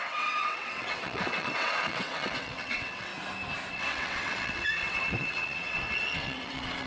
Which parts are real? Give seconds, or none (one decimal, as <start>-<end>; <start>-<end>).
3.1-3.7